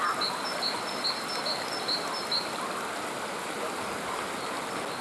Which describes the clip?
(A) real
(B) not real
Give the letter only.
A